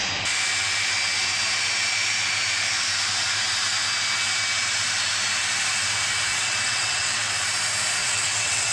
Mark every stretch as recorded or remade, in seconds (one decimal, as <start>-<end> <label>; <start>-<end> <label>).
0.0-6.4 recorded; 6.4-7.3 remade; 7.3-8.0 recorded; 8.0-8.7 remade